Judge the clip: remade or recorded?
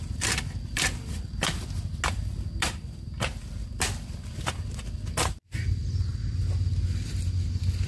recorded